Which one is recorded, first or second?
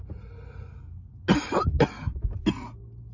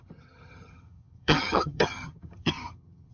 first